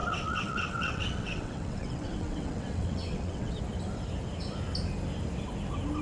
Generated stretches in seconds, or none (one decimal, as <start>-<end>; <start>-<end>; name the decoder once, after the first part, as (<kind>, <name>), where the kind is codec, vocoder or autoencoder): 0.0-3.6 (vocoder, WaveNeXt)